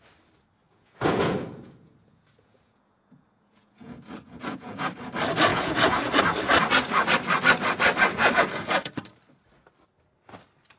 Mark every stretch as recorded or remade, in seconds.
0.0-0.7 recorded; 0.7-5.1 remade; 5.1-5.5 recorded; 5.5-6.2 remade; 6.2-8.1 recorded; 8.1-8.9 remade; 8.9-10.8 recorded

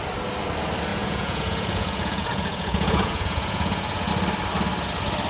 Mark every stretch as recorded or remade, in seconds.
0.0-0.9 recorded; 0.9-4.1 remade; 4.1-5.3 recorded

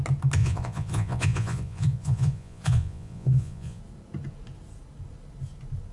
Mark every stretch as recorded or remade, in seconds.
0.0-0.4 recorded; 0.4-3.8 remade; 3.8-5.9 recorded

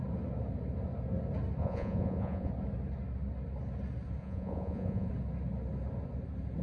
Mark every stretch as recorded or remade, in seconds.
0.0-1.6 recorded; 1.6-2.5 remade; 2.5-4.2 recorded; 4.2-5.1 remade; 5.1-6.6 recorded

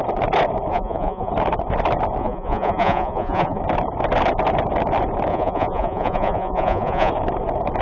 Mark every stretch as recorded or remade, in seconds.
0.0-0.7 recorded; 0.7-1.3 remade; 1.3-2.2 recorded; 2.2-3.6 remade; 3.6-5.3 recorded; 5.3-7.1 remade; 7.1-7.8 recorded

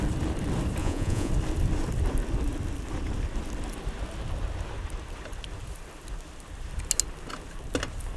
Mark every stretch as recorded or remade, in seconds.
0.0-0.8 recorded; 0.8-1.3 remade; 1.3-8.2 recorded

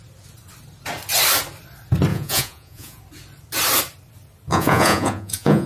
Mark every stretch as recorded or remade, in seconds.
0.0-2.1 recorded; 2.1-3.0 remade; 3.0-4.5 recorded; 4.5-5.7 remade

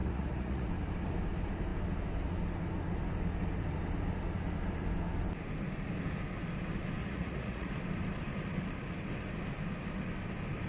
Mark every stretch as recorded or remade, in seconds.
0.0-0.7 remade; 0.7-7.0 recorded; 7.0-7.7 remade; 7.7-10.7 recorded